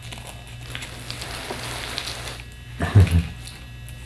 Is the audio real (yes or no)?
yes